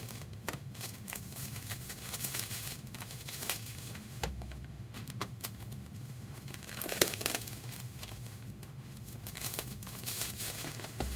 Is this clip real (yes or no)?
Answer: no